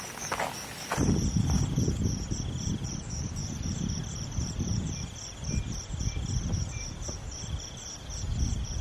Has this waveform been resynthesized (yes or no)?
no